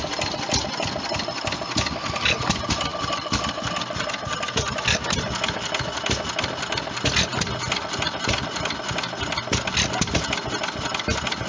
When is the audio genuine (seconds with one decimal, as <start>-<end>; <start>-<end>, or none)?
0.0-11.5